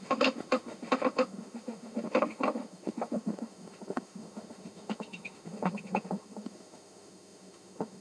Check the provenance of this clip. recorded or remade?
remade